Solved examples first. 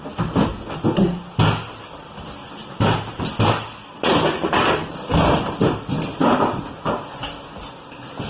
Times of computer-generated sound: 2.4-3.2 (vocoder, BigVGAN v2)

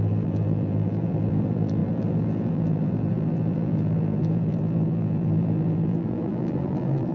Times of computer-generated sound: 0.0-7.1 (vocoder, BigVGAN v2)

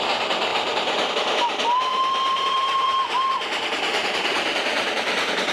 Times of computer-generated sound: 0.5-1.1 (vocoder, BigVGAN v2); 1.9-5.5

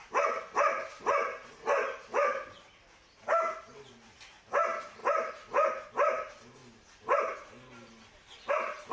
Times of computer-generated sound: 0.0-0.9 (vocoder, BigVGAN v2); 3.7-5.0; 5.9-6.6; 8.5-8.9

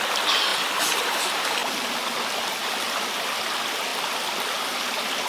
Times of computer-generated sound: 0.5-1.1 (vocoder, BigVGAN v2)

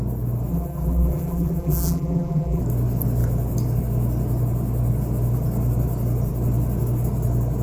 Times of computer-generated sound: 0.5-2.6 (vocoder, BigVGAN v2)

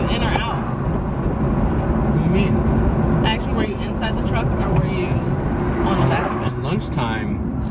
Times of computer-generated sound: 3.5-5.6 (vocoder, BigVGAN v2); 6.2-6.7

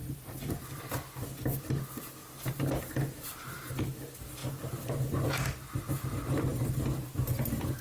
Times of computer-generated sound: 0.0-0.8 (vocoder, BigVGAN v2); 2.2-3.7